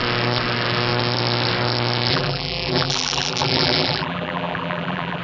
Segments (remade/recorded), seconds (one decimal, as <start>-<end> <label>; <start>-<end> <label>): 0.0-2.1 recorded; 2.1-5.2 remade